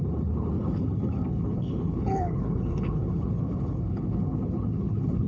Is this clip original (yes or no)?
no